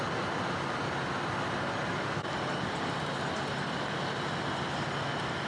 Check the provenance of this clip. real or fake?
real